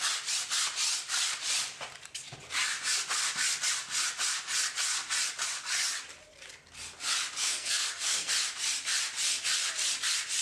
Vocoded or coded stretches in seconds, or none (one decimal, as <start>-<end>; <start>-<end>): 7.4-8.3